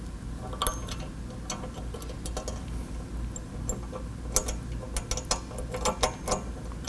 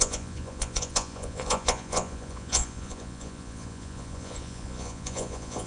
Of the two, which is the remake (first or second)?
second